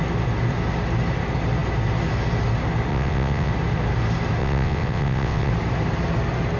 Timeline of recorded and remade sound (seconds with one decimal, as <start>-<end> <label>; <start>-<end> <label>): 0.0-2.9 recorded; 2.9-3.5 remade; 3.5-4.4 recorded; 4.4-5.5 remade; 5.5-6.6 recorded